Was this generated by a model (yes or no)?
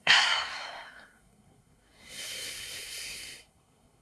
yes